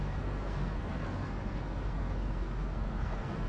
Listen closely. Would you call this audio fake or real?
fake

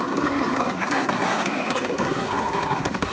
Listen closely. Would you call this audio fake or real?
fake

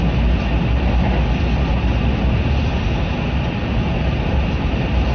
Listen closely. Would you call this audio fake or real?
real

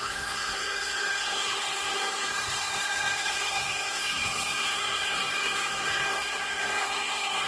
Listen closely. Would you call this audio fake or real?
fake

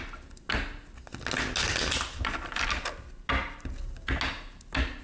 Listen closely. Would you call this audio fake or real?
real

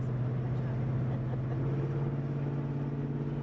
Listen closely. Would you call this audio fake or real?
real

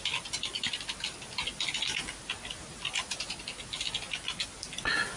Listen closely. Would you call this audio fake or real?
real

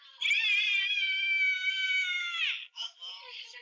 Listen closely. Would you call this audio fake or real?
real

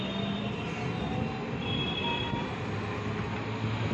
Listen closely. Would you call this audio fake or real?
real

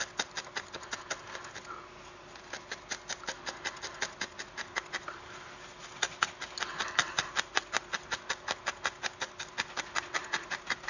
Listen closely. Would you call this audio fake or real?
real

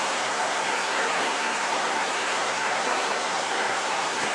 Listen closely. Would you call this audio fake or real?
fake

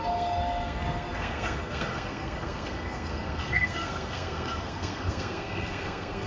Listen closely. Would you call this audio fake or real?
fake